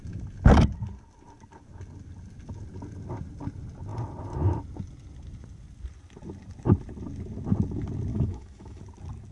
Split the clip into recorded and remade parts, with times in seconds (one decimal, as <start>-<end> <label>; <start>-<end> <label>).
0.0-8.1 recorded; 8.1-8.8 remade; 8.8-9.3 recorded